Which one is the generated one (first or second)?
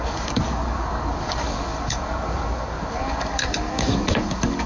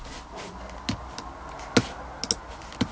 first